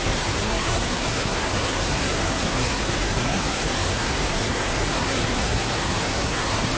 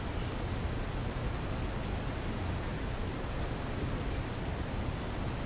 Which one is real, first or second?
second